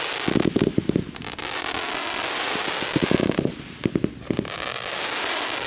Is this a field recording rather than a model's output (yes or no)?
yes